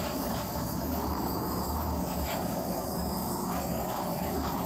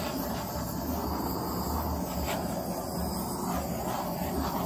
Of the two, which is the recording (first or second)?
second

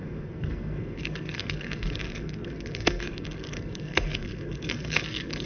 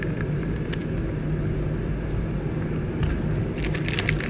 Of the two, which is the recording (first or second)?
second